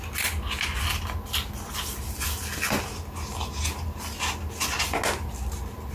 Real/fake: real